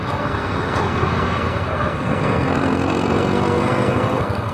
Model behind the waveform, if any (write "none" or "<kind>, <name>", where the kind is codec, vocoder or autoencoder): codec, SNAC